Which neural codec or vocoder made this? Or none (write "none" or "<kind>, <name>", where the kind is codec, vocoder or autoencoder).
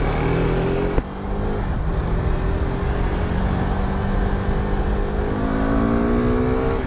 none